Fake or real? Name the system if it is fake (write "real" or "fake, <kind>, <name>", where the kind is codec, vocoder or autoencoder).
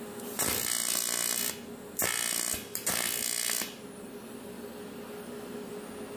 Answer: real